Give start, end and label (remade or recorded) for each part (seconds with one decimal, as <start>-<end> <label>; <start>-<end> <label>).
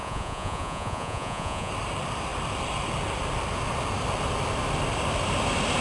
0.0-1.7 remade; 1.7-5.8 recorded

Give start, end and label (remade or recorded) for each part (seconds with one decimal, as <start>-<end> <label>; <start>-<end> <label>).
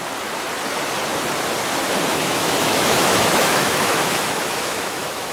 0.0-2.1 recorded; 2.1-5.3 remade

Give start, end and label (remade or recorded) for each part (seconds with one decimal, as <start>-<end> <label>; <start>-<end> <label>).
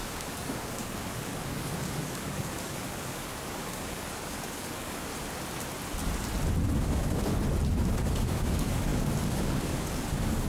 0.0-5.1 remade; 5.1-6.8 recorded; 6.8-7.3 remade; 7.3-7.9 recorded; 7.9-10.5 remade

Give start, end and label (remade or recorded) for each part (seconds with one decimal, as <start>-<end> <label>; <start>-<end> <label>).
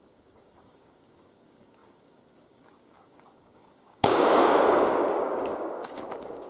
0.0-6.5 remade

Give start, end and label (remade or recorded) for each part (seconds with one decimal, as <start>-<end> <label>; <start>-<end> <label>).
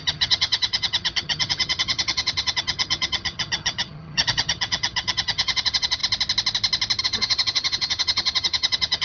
0.0-6.0 remade; 6.0-7.0 recorded; 7.0-9.0 remade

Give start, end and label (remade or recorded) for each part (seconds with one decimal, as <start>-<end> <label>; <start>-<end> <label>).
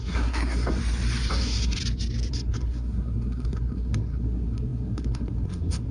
0.0-0.8 remade; 0.8-1.3 recorded; 1.3-1.8 remade; 1.8-2.3 recorded; 2.3-5.9 remade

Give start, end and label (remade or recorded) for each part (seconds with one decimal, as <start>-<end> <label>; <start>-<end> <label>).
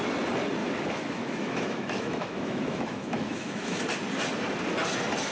0.0-0.6 recorded; 0.6-3.8 remade; 3.8-5.3 recorded